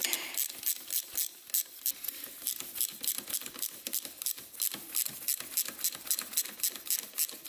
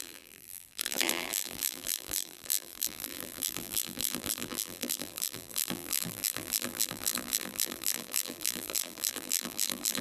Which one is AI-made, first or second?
second